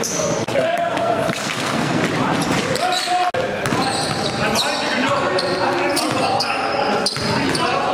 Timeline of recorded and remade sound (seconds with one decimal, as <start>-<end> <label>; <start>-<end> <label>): 0.0-2.0 remade; 2.0-6.2 recorded; 6.2-6.8 remade; 6.8-7.9 recorded